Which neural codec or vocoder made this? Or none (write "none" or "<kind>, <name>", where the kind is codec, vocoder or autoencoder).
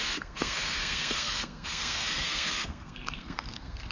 codec, SNAC